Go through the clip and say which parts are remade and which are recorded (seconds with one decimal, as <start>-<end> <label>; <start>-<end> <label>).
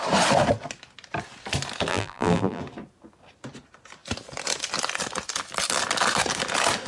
0.0-1.9 recorded; 1.9-2.6 remade; 2.6-6.9 recorded